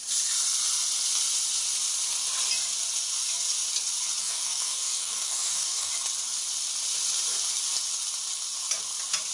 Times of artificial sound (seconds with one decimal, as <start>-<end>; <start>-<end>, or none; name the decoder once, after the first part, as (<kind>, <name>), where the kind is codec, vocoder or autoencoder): 4.2-5.9 (codec, DAC)